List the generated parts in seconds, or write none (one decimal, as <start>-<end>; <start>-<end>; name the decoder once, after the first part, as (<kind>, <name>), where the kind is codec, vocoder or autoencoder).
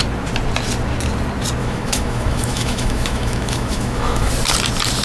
1.6-4.3 (autoencoder, DAC-VAE)